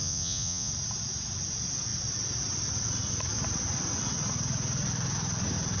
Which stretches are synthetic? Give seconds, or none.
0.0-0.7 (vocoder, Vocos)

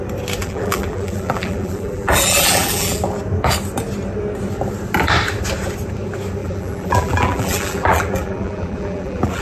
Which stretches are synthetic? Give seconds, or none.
0.4-3.0 (vocoder, BigVGAN v2); 6.4-9.4